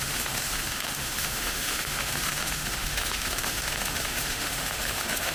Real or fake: fake